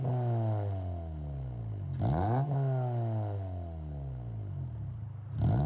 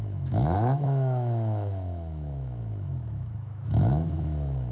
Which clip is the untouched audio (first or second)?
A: first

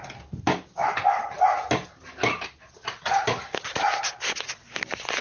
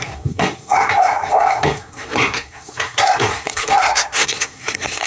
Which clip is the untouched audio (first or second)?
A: first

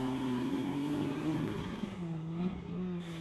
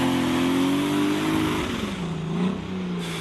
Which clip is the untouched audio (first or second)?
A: second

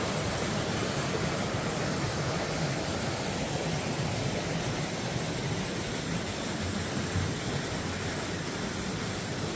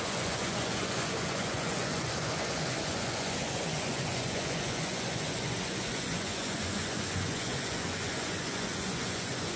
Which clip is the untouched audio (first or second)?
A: first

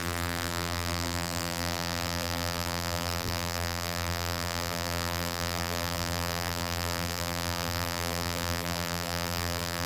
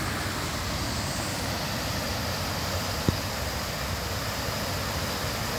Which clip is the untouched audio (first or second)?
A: second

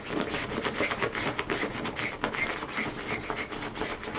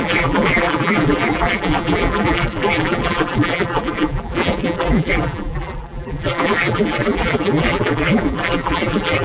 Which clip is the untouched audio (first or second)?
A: first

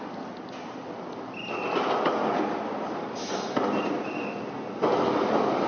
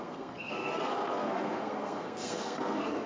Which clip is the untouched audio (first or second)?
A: first